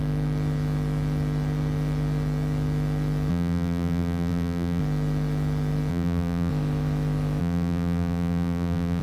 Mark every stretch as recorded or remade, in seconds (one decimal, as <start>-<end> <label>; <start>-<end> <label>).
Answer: 0.0-3.3 recorded; 3.3-4.8 remade; 4.8-5.9 recorded; 5.9-6.5 remade; 6.5-7.4 recorded; 7.4-9.0 remade